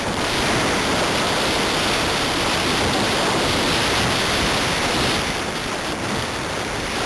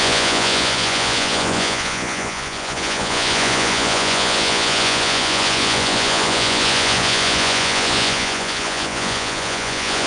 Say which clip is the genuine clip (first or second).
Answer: first